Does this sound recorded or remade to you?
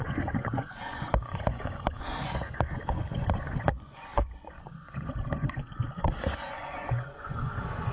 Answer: remade